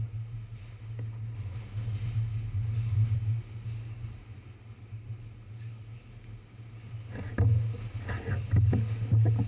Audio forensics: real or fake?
real